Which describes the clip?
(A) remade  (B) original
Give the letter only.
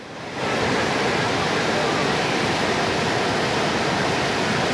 B